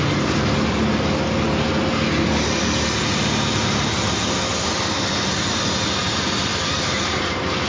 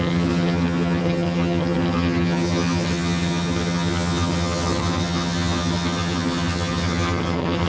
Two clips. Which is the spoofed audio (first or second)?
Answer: second